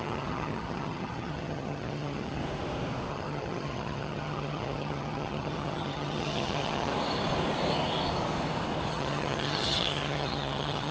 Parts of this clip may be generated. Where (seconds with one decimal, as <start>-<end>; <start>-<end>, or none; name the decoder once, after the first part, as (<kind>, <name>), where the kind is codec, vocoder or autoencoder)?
0.0-2.4 (vocoder, HiFi-GAN); 3.1-6.9; 8.9-10.9